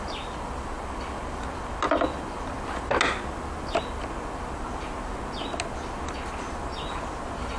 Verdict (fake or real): real